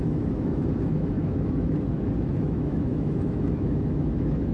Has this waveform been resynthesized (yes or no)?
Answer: yes